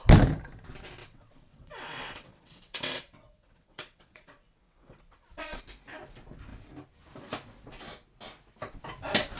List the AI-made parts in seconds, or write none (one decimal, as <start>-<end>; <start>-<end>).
1.0-5.6